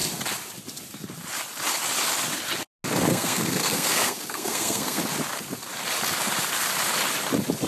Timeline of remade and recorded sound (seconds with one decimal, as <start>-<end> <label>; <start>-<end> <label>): 0.0-3.1 recorded; 3.1-5.0 remade; 5.0-7.7 recorded